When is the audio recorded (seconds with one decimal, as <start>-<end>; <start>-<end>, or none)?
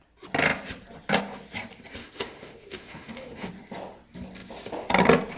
0.0-2.0; 3.5-5.4